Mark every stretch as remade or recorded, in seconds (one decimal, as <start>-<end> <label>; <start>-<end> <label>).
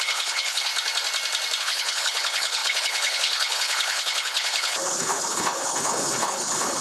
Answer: 0.0-0.7 remade; 0.7-1.6 recorded; 1.6-6.8 remade